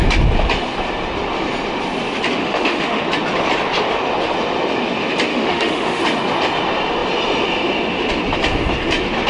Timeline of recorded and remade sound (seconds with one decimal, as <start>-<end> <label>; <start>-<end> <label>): 0.0-2.4 recorded; 2.4-3.0 remade; 3.0-5.3 recorded; 5.3-6.0 remade; 6.0-9.3 recorded